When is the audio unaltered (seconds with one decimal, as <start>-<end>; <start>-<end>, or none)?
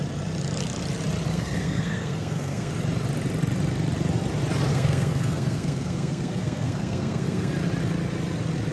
0.0-1.3; 2.7-4.7; 7.5-8.7